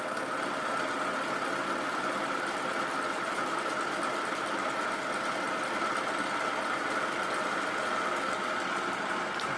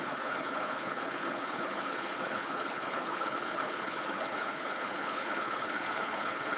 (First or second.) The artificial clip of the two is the second